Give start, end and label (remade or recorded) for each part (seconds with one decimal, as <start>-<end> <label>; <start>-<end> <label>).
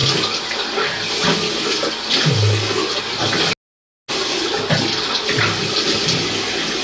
0.0-6.8 recorded